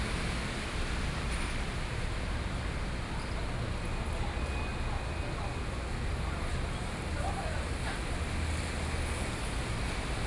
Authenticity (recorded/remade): recorded